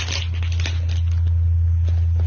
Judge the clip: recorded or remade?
recorded